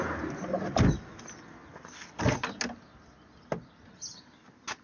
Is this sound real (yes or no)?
yes